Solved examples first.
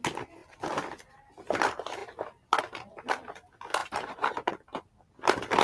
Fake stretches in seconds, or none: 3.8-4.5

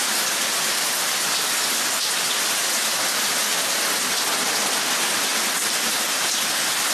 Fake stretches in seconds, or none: 0.0-4.1

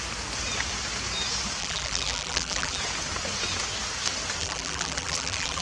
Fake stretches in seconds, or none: 1.6-2.8; 4.4-5.6